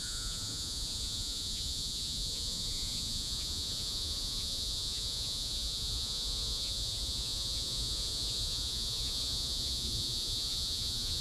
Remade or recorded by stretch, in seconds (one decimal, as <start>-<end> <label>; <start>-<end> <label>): 0.0-11.2 remade